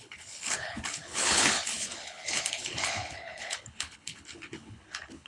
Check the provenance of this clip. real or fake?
fake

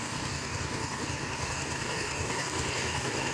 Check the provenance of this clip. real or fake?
fake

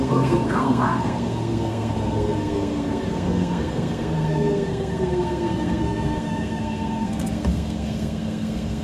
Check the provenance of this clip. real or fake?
fake